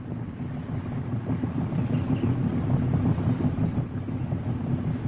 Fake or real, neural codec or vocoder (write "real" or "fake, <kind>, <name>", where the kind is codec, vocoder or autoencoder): real